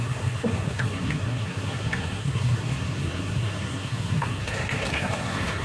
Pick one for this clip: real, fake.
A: fake